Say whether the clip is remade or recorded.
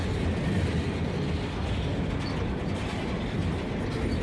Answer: recorded